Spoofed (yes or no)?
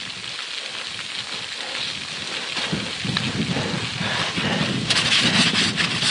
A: no